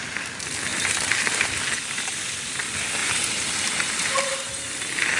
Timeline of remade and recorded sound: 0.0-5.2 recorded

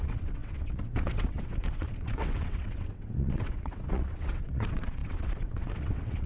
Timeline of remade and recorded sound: 0.0-6.3 remade

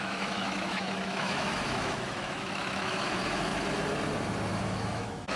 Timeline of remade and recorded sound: 0.0-3.5 remade; 3.5-4.6 recorded; 4.6-5.4 remade